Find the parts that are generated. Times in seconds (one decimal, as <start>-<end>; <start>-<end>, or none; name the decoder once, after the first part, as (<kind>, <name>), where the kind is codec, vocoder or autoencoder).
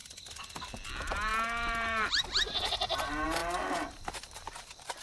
0.9-5.0 (vocoder, BigVGAN v2)